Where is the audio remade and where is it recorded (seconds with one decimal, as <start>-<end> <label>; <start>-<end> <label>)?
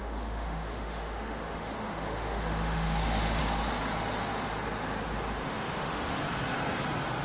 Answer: 0.0-3.4 remade; 3.4-5.4 recorded; 5.4-6.2 remade; 6.2-7.2 recorded